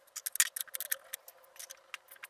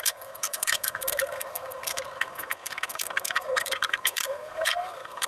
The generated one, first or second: second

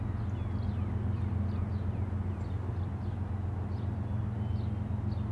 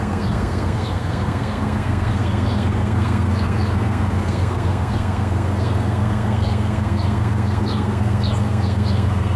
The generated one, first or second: second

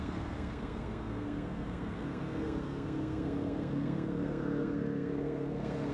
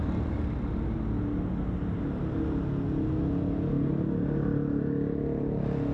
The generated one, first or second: first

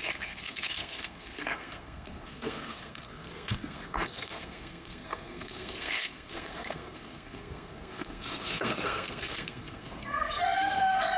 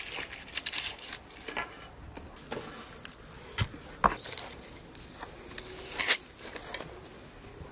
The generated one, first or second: first